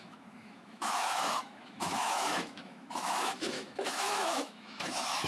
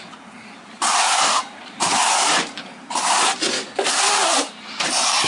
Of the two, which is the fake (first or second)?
first